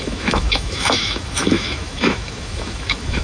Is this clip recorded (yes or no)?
no